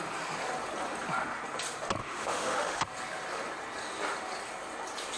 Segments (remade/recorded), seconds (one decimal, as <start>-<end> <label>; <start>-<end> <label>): 0.0-2.0 recorded; 2.0-2.8 remade; 2.8-5.2 recorded